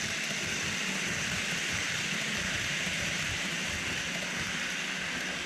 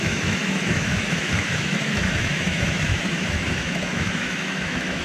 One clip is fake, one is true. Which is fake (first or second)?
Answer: second